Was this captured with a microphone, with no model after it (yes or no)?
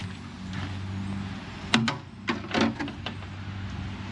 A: yes